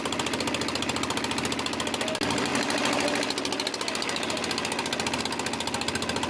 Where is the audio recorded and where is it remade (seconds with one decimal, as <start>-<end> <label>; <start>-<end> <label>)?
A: 0.0-6.3 recorded